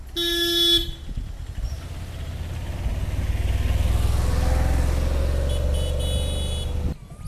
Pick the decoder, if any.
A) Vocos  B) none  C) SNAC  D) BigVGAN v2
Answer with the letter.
B